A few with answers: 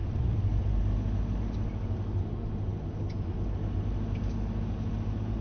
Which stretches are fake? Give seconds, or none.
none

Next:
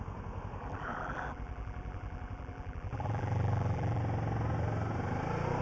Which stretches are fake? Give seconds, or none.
0.6-4.0

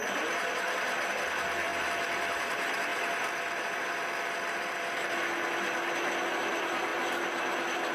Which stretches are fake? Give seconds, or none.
0.0-1.7; 2.4-2.9; 6.4-6.9

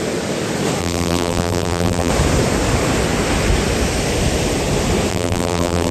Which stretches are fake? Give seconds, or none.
0.8-2.1; 5.1-5.9

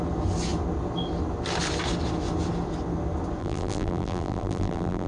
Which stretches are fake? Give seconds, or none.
3.4-5.1

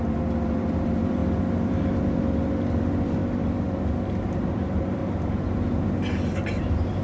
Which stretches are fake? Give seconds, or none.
0.0-1.2; 1.7-3.2; 4.2-5.0; 6.6-7.0